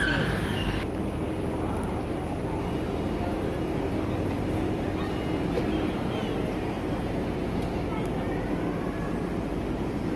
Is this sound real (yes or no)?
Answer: yes